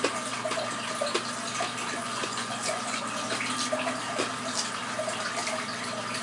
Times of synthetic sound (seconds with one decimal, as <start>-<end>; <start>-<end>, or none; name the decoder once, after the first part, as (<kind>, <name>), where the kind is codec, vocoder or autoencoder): 2.0-3.0 (vocoder, Vocos)